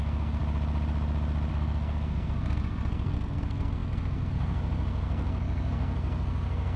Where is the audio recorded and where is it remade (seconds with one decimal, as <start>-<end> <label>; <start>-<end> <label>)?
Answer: 0.0-0.4 remade; 0.4-1.5 recorded; 1.5-6.8 remade